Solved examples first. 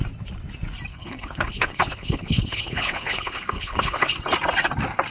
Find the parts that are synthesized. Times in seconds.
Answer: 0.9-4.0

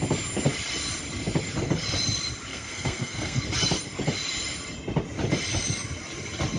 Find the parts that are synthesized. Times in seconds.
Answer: 2.5-3.4

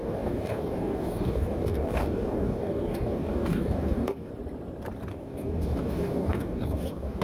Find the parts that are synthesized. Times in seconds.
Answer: 0.0-4.3; 5.1-7.2

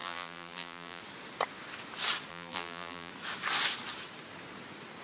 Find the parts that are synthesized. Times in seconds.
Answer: 0.0-1.0; 2.3-3.1

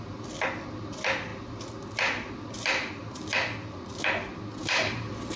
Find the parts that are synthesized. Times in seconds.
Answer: 4.6-5.4

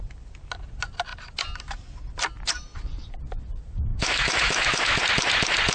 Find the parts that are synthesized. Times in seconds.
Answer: 3.9-5.0

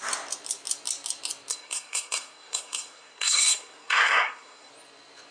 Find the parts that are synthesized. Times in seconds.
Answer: 1.5-4.7